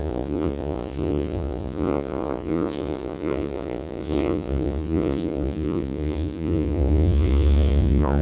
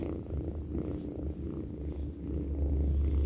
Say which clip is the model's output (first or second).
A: first